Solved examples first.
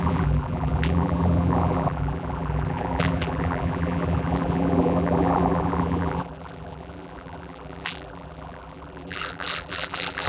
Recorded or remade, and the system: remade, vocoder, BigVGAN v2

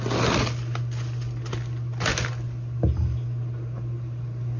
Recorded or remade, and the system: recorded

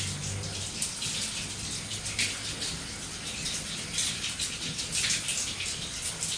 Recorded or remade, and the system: recorded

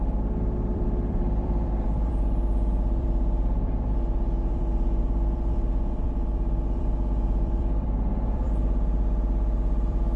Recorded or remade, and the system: remade, vocoder, BigVGAN v2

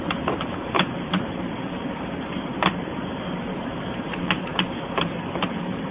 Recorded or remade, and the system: remade, vocoder, BigVGAN v2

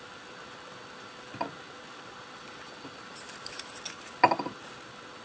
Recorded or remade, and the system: recorded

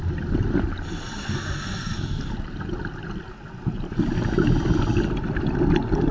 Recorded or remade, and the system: recorded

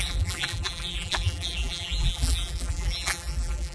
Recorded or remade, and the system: remade, vocoder, BigVGAN v2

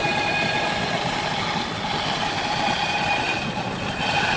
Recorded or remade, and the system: recorded